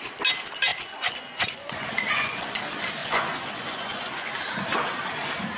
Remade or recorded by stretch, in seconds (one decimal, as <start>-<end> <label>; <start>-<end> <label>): 0.0-0.7 recorded; 0.7-2.6 remade; 2.6-3.0 recorded; 3.0-4.3 remade; 4.3-5.6 recorded